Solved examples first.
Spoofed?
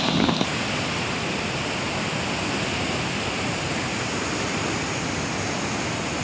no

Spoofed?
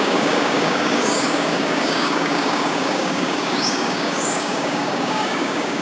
yes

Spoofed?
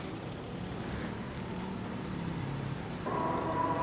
no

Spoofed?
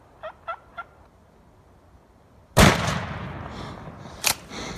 no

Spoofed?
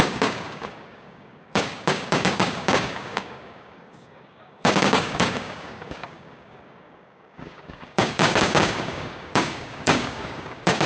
yes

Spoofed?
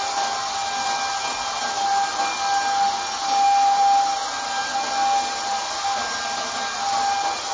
no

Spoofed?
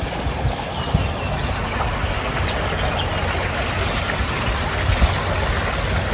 no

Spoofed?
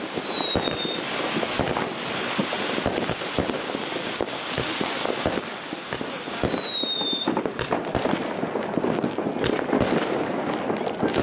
no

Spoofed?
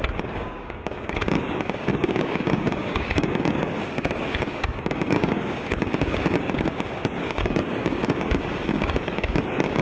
yes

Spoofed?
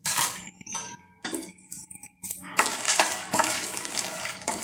yes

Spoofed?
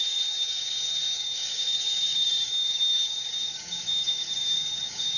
yes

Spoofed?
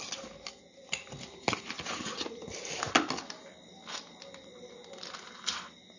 no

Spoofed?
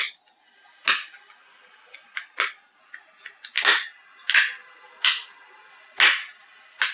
no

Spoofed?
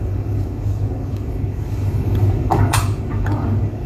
yes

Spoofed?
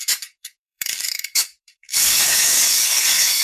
yes